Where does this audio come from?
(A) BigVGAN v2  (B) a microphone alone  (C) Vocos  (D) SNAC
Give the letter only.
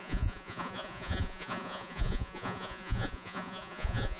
C